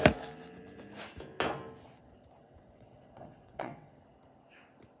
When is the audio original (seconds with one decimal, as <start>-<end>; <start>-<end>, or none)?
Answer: 0.0-2.4; 4.0-5.0